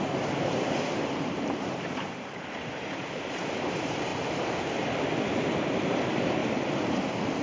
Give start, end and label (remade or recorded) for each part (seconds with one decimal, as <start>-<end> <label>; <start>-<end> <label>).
0.0-4.1 remade; 4.1-5.9 recorded; 5.9-6.4 remade; 6.4-7.4 recorded